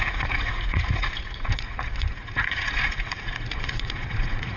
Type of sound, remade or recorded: remade